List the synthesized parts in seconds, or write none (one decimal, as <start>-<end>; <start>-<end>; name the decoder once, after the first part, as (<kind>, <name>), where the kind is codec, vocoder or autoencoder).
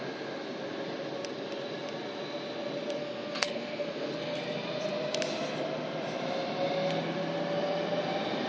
3.0-4.4 (codec, SNAC)